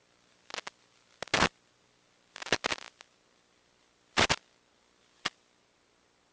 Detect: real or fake real